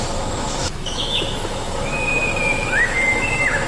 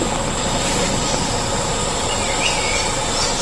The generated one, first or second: first